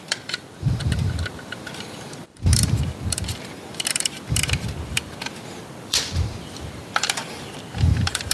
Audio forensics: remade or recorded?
remade